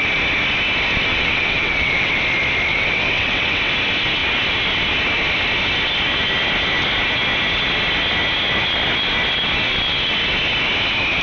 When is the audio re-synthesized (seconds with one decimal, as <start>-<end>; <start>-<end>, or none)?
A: 1.1-2.2; 2.7-3.7